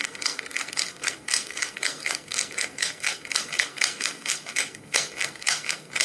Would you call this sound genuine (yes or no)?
no